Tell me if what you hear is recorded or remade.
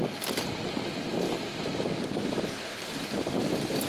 recorded